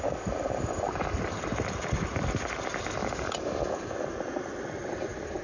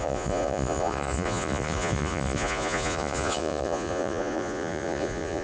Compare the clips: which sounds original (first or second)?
first